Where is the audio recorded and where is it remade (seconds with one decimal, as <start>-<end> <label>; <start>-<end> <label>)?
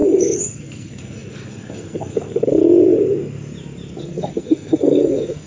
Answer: 0.0-2.6 remade; 2.6-4.0 recorded; 4.0-5.5 remade